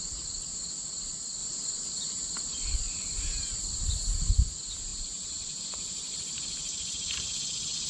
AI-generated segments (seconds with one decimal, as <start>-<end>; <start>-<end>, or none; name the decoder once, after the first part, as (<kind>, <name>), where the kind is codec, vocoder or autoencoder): 1.4-4.3 (vocoder, BigVGAN v2); 4.9-5.6